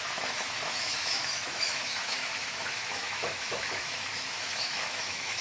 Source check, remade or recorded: remade